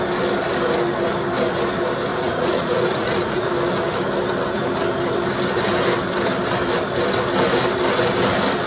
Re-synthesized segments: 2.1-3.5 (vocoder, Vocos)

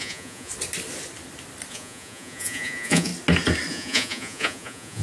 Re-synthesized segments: 0.0-0.5 (vocoder, Vocos); 1.7-3.1; 3.7-5.0